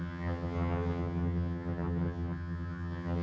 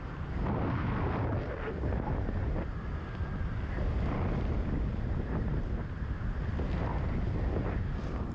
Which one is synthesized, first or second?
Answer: first